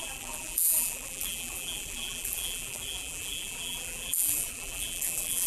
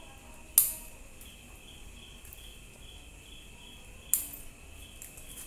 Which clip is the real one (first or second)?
second